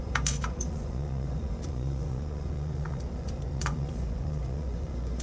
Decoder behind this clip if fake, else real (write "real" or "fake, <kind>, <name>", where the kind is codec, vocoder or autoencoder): fake, vocoder, Vocos